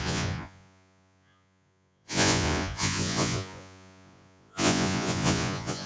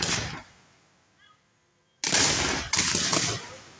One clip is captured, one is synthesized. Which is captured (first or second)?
second